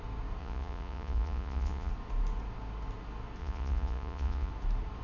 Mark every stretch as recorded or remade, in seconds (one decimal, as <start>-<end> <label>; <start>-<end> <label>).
0.0-0.4 recorded; 0.4-1.9 remade; 1.9-3.4 recorded; 3.4-4.5 remade; 4.5-5.0 recorded